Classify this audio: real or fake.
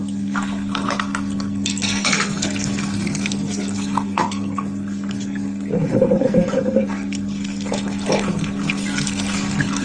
fake